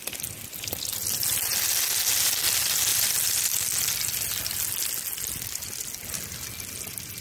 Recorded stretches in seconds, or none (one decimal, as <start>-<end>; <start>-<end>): 0.0-7.2